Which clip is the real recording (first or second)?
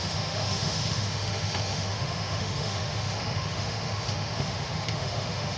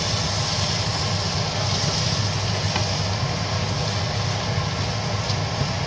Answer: second